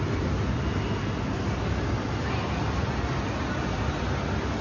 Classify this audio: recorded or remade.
recorded